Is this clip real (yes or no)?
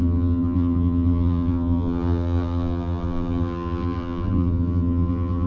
no